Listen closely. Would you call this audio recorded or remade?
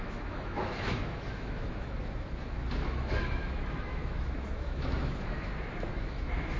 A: remade